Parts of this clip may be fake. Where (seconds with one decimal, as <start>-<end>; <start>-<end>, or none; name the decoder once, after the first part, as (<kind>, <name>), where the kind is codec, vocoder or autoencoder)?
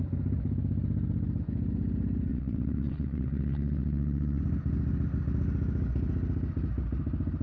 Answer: 2.3-4.4 (vocoder, WaveNeXt)